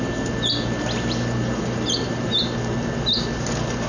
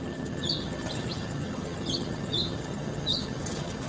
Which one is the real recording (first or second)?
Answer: first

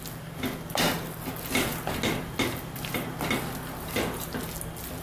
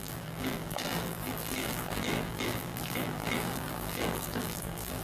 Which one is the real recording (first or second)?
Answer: first